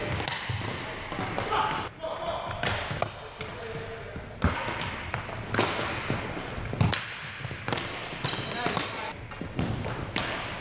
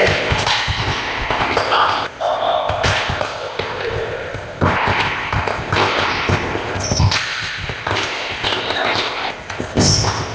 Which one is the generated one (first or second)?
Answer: second